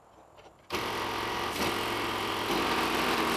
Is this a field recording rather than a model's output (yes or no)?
no